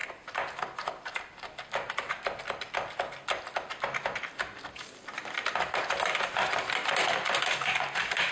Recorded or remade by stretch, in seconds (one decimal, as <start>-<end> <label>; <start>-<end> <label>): 0.0-8.3 recorded